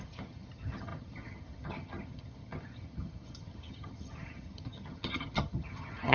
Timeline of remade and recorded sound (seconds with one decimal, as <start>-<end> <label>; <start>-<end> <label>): 0.0-6.1 remade